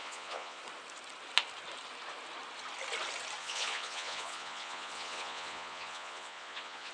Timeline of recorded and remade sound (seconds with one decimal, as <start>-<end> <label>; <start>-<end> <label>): 0.0-0.6 remade; 0.6-3.4 recorded; 3.4-6.9 remade